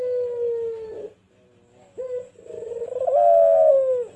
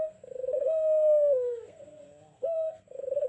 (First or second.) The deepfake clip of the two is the second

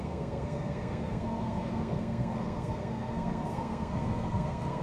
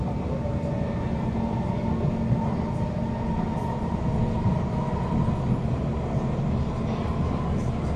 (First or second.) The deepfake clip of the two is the first